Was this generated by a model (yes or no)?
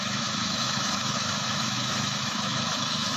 yes